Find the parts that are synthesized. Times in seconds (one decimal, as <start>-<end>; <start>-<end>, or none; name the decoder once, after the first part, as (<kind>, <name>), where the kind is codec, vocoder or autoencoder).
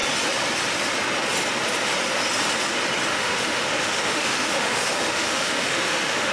3.1-6.3 (autoencoder, DAC-VAE)